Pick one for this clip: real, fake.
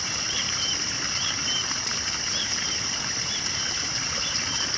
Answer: fake